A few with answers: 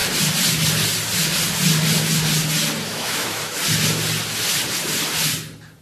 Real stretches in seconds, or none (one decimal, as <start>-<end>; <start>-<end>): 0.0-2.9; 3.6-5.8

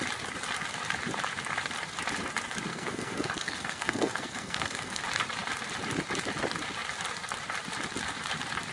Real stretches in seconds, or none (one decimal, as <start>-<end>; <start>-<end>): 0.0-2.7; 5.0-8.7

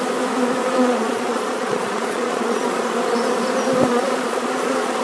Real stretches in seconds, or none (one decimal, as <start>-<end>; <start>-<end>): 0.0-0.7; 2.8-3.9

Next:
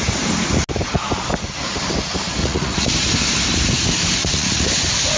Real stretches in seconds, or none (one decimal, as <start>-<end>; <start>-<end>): 0.0-2.4; 2.9-4.2; 4.7-5.2

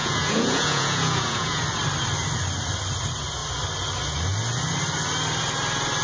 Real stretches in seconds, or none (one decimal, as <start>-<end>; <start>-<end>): 1.6-6.0